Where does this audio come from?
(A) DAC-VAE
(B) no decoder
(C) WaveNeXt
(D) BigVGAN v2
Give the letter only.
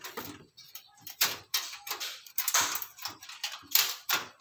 D